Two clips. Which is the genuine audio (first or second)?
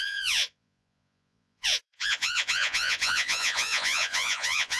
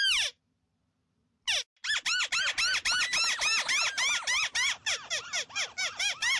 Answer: second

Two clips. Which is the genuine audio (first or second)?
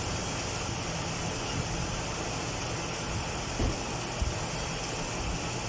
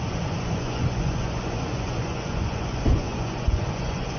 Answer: first